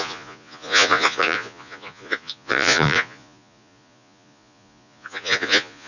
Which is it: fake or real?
fake